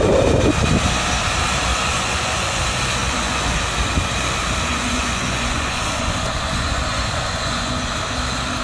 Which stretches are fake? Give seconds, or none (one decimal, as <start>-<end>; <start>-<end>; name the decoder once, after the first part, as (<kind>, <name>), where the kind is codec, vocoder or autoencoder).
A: 1.7-2.6 (vocoder, Vocos); 3.0-3.6; 4.7-7.9